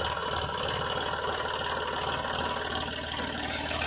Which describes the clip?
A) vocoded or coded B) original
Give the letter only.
B